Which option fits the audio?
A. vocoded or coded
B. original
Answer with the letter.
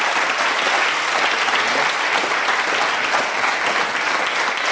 B